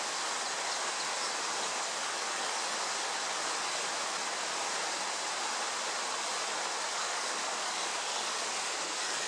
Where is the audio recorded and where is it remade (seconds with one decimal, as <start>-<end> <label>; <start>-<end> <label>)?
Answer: 0.0-2.0 recorded; 2.0-3.1 remade; 3.1-6.9 recorded; 6.9-9.3 remade